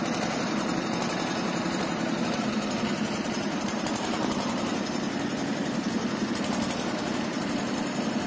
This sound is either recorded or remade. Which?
remade